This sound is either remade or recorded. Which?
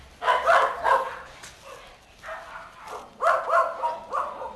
recorded